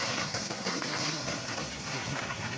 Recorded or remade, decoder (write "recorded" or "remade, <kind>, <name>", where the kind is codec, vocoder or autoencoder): remade, codec, SNAC